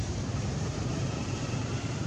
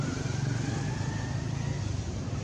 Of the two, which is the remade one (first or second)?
first